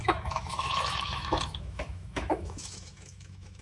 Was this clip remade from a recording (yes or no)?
yes